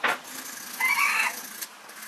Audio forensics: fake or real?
real